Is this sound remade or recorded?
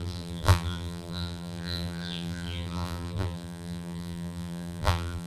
remade